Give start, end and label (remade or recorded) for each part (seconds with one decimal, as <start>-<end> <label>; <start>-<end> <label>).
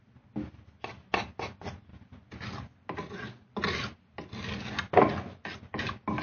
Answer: 0.0-6.2 recorded